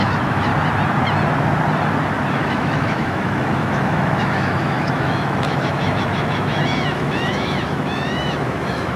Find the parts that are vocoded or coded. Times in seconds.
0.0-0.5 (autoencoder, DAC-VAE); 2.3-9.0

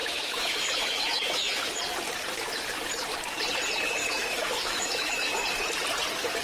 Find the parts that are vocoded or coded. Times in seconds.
0.0-1.8 (autoencoder, DAC-VAE); 4.0-5.3